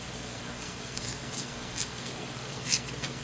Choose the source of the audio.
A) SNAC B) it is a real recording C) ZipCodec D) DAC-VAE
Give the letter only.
A